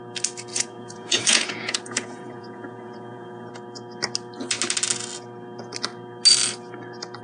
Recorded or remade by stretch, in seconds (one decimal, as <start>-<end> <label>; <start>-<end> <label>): 0.0-0.5 recorded; 0.5-3.5 remade; 3.5-7.2 recorded